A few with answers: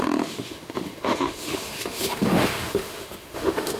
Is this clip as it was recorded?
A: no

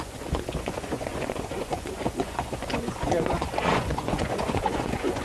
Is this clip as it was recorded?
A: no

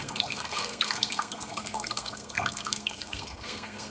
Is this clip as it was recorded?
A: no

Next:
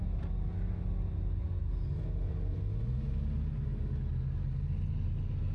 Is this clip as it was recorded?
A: yes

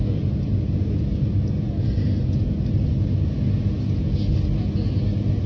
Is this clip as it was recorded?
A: yes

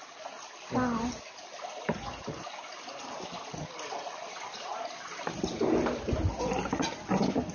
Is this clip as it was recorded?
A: yes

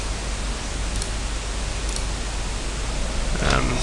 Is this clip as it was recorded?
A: yes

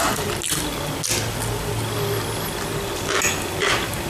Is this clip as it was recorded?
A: yes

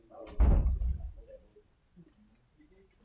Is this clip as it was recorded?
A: yes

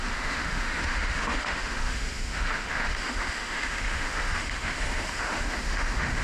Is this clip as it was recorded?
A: no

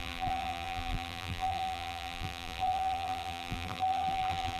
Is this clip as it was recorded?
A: no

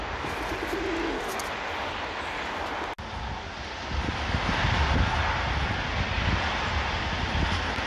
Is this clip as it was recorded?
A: yes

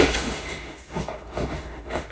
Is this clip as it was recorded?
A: no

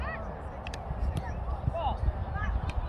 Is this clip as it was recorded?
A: yes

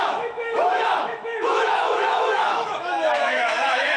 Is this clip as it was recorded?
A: no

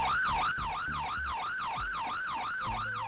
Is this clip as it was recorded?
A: yes